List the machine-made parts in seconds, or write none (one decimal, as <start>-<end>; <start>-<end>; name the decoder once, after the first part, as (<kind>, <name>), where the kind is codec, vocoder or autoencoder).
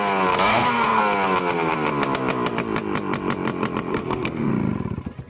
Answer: 0.5-1.0 (codec, SNAC); 3.9-4.5